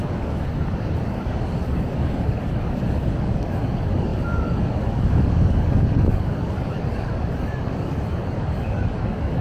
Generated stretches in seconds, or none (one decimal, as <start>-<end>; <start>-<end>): 0.0-9.4